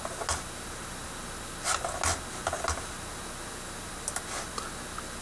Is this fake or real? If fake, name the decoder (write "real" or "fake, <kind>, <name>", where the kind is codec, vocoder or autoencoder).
real